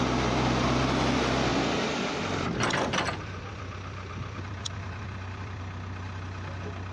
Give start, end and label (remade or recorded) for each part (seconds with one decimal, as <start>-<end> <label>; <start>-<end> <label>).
0.0-1.5 recorded; 1.5-5.6 remade; 5.6-6.9 recorded